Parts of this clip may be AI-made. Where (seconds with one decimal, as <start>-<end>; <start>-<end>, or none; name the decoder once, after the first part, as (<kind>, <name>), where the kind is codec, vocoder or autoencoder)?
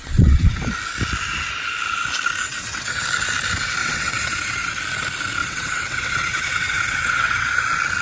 0.0-0.6 (vocoder, WaveNeXt); 2.4-3.0; 3.8-4.7; 5.4-7.5